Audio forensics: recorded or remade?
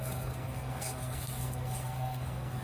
remade